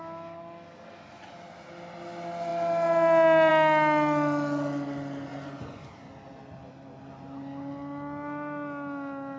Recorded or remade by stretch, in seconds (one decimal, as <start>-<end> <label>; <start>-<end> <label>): 0.0-5.3 recorded; 5.3-5.9 remade; 5.9-9.4 recorded